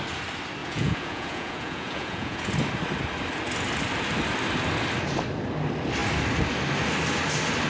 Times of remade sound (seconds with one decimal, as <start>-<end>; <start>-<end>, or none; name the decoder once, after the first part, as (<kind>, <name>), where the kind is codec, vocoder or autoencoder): 0.6-2.5 (vocoder, Vocos)